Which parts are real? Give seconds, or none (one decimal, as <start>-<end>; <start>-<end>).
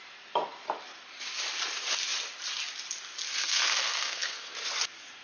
0.0-3.4; 4.5-5.2